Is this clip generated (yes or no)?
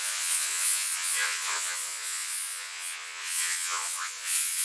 yes